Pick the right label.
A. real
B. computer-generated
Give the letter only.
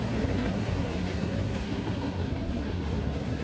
B